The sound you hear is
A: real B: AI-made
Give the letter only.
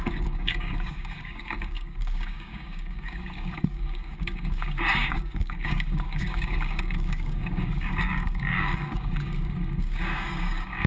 B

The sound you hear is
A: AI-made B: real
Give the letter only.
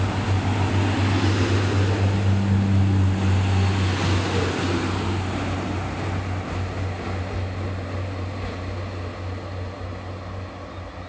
B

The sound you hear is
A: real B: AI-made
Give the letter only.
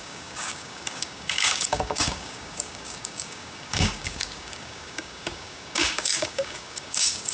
B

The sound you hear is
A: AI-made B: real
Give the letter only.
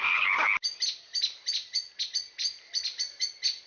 B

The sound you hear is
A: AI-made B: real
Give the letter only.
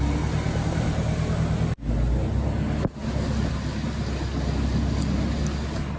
B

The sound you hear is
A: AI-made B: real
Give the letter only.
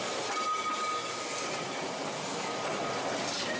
B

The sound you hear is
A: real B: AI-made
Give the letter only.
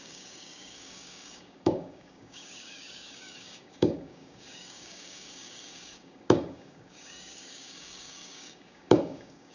B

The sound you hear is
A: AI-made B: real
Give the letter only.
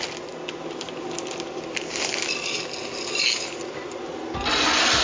B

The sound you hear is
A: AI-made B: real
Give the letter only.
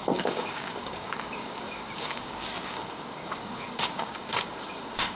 A